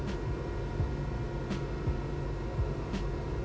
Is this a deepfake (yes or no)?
no